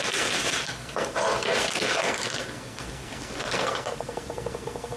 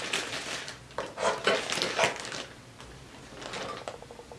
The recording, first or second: second